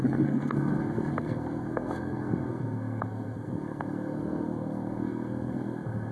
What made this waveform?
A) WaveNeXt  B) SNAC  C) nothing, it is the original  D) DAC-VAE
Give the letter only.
B